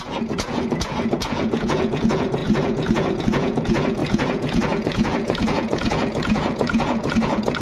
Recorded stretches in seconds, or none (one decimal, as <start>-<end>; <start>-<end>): none